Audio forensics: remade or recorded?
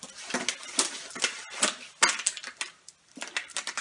recorded